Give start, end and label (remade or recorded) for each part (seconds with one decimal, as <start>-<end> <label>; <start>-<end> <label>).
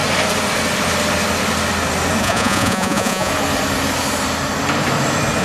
0.0-2.2 recorded; 2.2-3.3 remade; 3.3-5.4 recorded